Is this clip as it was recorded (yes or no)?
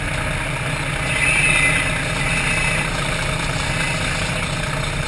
yes